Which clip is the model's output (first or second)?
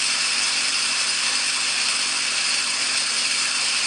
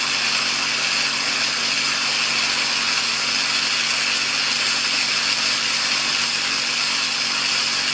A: first